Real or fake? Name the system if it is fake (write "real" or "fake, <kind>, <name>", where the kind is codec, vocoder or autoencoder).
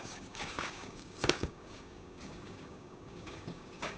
fake, codec, DAC